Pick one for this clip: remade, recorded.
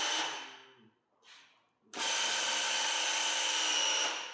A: recorded